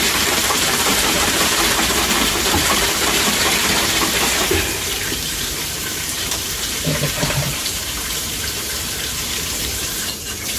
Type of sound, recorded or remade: remade